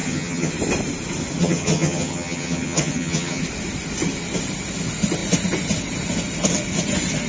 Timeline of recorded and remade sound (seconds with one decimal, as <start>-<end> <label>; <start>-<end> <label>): 0.0-0.5 remade; 0.5-1.4 recorded; 1.4-3.4 remade; 3.4-7.3 recorded